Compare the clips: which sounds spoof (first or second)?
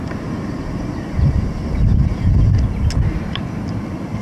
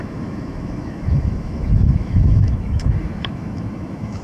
second